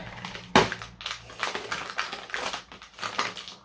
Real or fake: real